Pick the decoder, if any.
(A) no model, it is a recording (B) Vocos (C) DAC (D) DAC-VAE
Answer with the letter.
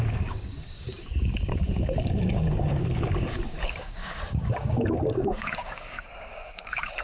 C